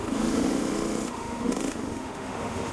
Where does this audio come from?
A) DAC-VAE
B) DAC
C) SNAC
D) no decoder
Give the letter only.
A